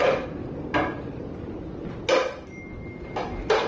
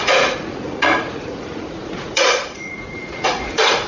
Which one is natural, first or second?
first